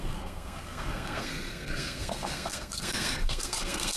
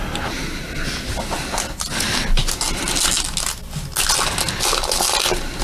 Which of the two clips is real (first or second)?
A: second